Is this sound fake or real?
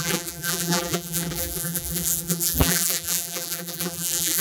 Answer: fake